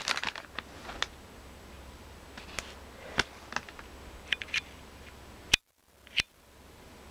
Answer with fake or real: real